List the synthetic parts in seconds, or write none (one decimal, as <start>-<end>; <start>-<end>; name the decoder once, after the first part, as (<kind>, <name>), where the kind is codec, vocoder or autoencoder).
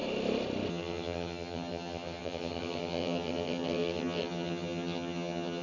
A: 0.7-5.6 (vocoder, HiFi-GAN)